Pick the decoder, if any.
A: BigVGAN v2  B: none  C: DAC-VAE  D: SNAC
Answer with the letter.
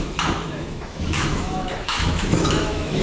C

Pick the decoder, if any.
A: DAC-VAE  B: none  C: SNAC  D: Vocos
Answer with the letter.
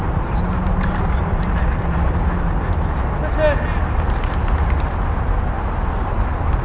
B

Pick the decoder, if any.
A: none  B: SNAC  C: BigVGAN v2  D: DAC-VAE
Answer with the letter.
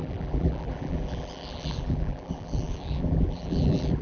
C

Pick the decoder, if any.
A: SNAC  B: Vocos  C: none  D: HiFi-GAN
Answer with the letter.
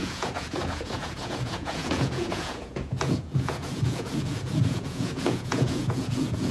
B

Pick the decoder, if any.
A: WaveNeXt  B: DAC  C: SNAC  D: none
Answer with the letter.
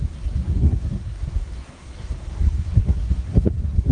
C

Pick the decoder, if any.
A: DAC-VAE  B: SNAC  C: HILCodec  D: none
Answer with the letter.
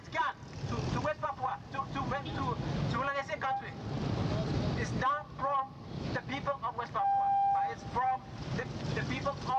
D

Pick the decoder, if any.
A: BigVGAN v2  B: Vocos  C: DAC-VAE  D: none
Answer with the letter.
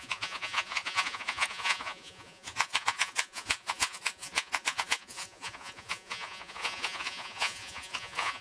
B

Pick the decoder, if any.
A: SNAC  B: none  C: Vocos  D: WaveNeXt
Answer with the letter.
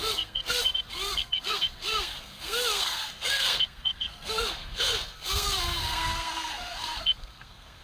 A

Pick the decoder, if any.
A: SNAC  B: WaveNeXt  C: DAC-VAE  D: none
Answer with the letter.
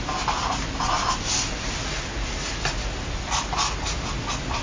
D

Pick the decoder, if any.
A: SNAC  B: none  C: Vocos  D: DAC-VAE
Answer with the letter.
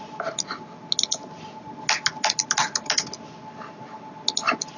B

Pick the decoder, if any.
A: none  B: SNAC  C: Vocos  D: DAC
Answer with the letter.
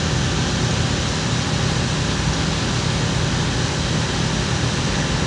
A